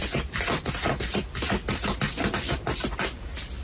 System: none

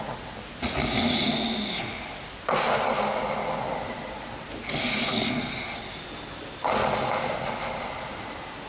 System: none